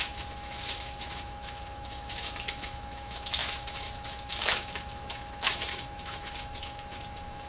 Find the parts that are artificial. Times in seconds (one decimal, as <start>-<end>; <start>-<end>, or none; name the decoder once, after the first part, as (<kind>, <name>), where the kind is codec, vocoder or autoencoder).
0.0-7.5 (autoencoder, DAC-VAE)